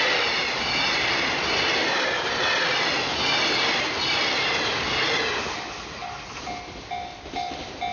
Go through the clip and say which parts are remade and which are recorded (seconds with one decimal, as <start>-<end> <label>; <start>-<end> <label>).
0.0-7.9 recorded